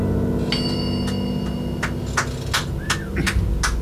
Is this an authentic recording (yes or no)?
yes